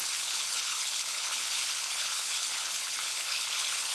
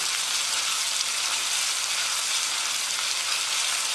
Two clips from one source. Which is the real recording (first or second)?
second